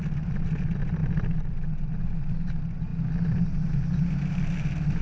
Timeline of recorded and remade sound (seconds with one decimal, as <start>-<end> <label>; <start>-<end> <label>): 0.0-5.0 recorded